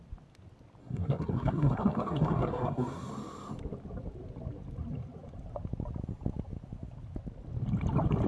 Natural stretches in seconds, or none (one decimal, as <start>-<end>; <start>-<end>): 0.0-0.8; 3.1-8.3